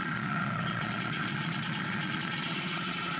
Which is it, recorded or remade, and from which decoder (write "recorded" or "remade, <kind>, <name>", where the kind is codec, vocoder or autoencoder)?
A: remade, vocoder, Vocos